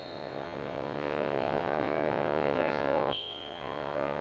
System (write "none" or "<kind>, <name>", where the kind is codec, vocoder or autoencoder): vocoder, WaveNeXt